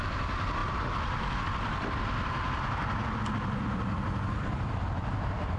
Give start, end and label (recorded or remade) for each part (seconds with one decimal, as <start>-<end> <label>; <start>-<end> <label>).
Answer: 0.0-5.6 remade